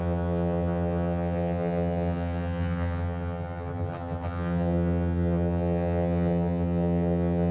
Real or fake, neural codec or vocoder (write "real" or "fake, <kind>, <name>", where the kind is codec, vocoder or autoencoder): fake, vocoder, HiFi-GAN